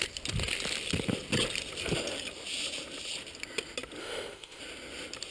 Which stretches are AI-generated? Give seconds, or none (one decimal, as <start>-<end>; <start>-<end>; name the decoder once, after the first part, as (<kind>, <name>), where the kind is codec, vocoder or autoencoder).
4.0-4.6 (autoencoder, DAC-VAE)